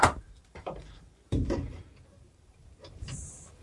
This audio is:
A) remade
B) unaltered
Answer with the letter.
A